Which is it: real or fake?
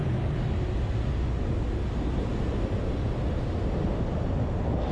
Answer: real